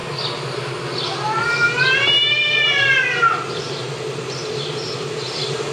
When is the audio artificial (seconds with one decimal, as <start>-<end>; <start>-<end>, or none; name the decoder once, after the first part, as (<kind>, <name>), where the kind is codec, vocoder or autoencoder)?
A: none